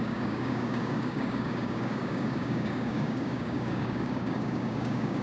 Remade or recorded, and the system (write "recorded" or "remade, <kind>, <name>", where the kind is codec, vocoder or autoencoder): remade, codec, DAC